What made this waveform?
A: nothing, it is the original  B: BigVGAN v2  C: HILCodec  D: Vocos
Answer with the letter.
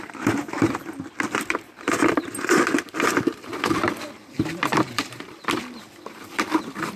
B